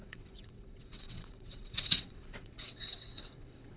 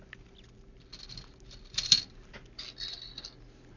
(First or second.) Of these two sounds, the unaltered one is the second